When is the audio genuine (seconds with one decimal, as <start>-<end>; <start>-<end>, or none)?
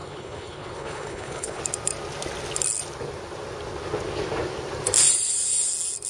1.6-6.1